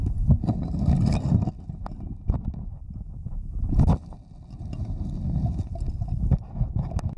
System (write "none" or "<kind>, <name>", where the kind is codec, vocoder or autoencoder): none